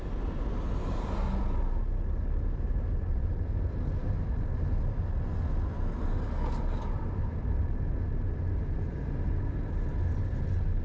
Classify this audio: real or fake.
real